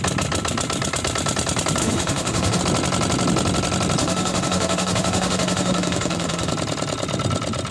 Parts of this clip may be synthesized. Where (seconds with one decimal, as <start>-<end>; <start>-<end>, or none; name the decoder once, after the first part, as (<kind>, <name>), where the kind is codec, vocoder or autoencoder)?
1.8-2.6 (autoencoder, DAC-VAE); 4.0-6.5